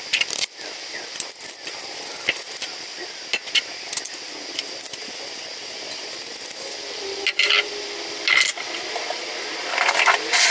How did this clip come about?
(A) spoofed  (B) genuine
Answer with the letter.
B